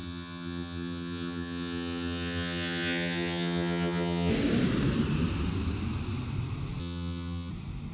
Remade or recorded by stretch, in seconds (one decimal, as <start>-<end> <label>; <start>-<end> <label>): 0.0-4.3 remade; 4.3-6.8 recorded; 6.8-7.5 remade; 7.5-7.9 recorded